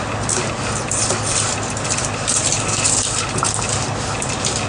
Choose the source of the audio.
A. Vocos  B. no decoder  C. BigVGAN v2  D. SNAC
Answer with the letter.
B